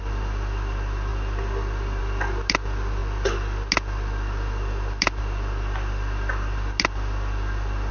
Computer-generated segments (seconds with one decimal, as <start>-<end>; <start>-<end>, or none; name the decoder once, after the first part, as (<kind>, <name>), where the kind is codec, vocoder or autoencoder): none

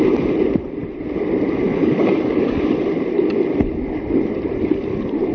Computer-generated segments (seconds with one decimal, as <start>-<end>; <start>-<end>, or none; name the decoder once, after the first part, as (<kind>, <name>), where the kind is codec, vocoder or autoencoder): 1.8-2.6 (codec, DAC)

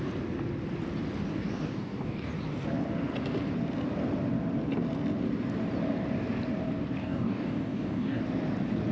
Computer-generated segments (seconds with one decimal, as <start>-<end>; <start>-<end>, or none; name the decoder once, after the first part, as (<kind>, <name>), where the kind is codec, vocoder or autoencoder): 1.3-2.3 (codec, DAC); 7.0-8.2

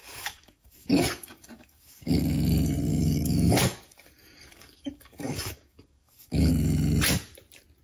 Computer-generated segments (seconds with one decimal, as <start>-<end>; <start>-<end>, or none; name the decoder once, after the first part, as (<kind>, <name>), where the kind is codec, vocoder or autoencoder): 0.0-2.2 (codec, DAC); 2.9-6.5

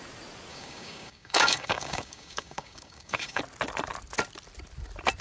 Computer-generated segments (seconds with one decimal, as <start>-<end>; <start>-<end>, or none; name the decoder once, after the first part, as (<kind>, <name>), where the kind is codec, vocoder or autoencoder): 0.5-3.4 (codec, DAC)

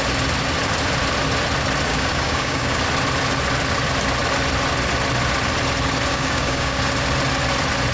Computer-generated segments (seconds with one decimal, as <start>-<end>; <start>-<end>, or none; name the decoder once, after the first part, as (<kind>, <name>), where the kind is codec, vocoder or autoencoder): 1.9-2.8 (codec, DAC); 6.1-6.8